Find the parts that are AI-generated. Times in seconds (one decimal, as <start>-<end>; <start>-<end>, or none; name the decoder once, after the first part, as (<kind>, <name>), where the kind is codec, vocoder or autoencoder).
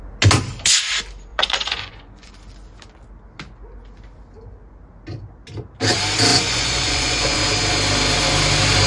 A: 1.3-2.3 (vocoder, Vocos); 6.3-7.4